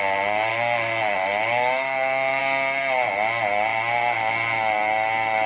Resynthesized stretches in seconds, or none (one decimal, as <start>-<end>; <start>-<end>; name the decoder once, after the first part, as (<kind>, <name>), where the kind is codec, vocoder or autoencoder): 0.5-2.4 (autoencoder, DAC-VAE)